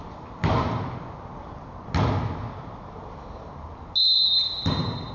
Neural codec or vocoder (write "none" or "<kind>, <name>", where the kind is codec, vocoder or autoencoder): none